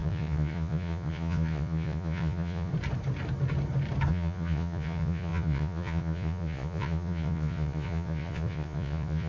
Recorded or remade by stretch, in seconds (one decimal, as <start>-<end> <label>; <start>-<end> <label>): 0.0-2.7 remade; 2.7-4.1 recorded; 4.1-9.3 remade